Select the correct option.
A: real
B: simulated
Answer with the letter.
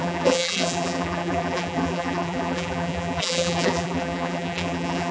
B